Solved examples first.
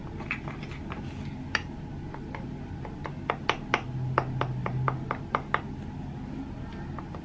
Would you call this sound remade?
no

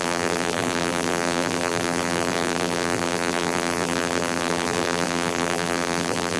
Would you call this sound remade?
yes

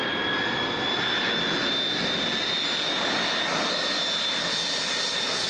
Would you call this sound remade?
no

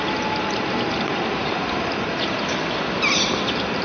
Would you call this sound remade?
yes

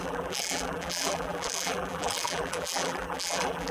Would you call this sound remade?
yes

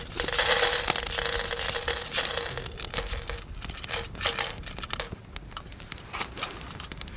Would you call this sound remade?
no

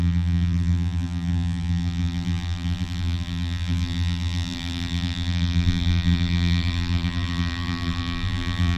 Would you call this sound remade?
yes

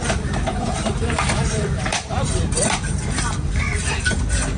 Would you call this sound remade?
yes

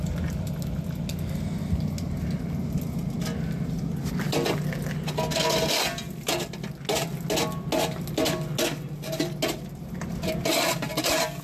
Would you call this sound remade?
no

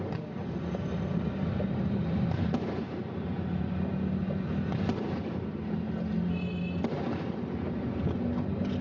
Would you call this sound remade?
no